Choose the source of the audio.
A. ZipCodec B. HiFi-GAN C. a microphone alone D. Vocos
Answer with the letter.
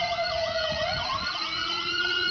D